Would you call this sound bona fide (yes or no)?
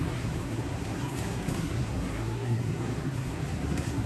no